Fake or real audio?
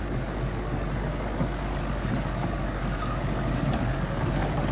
fake